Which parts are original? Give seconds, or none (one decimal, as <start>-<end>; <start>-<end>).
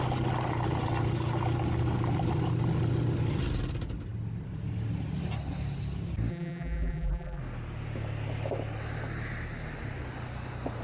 0.0-6.3; 7.4-10.8